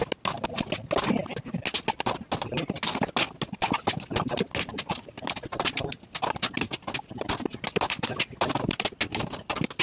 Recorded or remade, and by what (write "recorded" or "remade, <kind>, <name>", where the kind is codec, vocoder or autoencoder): recorded